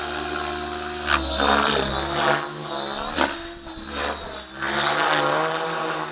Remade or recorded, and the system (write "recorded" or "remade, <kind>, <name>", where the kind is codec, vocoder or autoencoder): recorded